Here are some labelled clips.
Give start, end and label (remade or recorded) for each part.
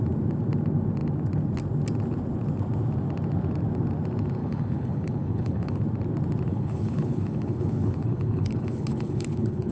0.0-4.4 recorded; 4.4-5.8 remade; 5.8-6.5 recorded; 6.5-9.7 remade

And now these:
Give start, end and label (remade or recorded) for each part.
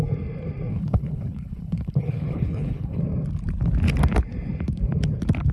0.0-0.7 recorded; 0.7-3.0 remade; 3.0-5.5 recorded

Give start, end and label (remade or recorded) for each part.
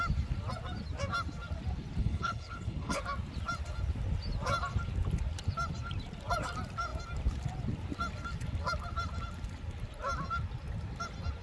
0.0-2.0 recorded; 2.0-3.0 remade; 3.0-11.4 recorded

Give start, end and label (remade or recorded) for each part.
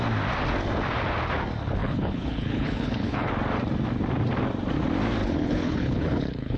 0.0-1.8 recorded; 1.8-3.3 remade; 3.3-5.2 recorded; 5.2-6.6 remade